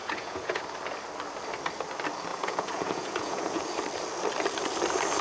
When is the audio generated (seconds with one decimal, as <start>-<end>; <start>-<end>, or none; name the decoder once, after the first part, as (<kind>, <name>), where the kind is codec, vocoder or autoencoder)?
0.0-0.6 (vocoder, Vocos); 2.3-3.6